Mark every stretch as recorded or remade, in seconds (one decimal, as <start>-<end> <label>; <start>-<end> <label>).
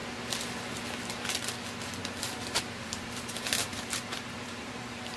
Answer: 0.0-2.0 recorded; 2.0-5.2 remade